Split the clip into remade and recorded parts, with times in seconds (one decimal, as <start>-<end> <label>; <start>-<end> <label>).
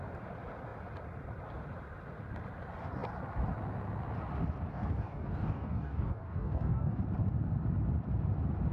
0.0-4.7 recorded; 4.7-7.0 remade; 7.0-8.7 recorded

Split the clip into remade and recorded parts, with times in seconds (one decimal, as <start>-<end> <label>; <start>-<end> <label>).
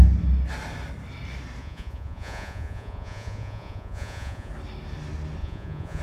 0.0-1.6 recorded; 1.6-4.5 remade; 4.5-5.4 recorded; 5.4-6.0 remade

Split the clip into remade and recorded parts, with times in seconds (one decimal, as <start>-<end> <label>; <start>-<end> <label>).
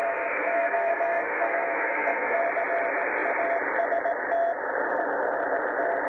0.0-2.4 remade; 2.4-6.1 recorded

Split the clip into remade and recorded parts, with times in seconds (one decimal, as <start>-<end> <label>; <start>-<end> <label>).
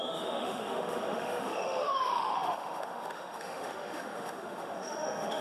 0.0-5.4 remade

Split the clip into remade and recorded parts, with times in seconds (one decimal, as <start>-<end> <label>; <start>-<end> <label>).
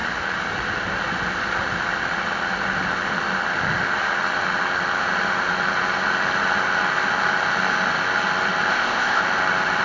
0.0-8.7 recorded; 8.7-9.2 remade; 9.2-9.8 recorded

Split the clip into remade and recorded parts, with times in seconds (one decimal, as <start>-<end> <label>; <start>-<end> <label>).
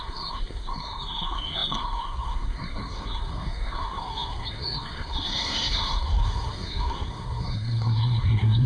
0.0-8.7 remade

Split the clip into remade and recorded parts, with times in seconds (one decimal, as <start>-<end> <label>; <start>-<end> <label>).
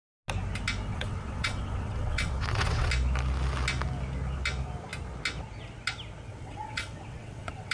0.0-0.9 recorded; 0.9-2.9 remade; 2.9-6.3 recorded; 6.3-7.7 remade